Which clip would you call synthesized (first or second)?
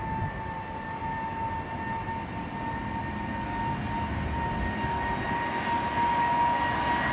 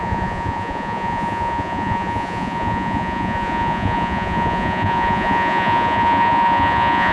second